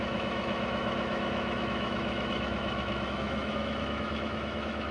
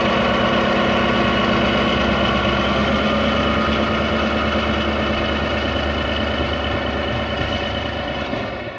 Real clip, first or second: second